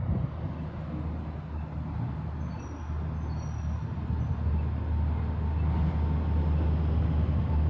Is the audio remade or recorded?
recorded